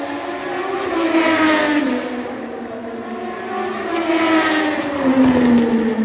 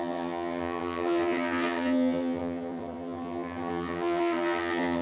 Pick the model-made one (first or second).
second